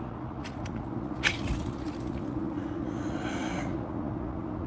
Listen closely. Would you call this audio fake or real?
fake